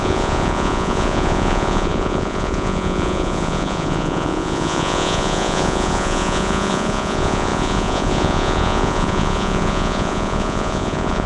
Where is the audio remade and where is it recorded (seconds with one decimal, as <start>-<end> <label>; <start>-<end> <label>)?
0.0-11.3 remade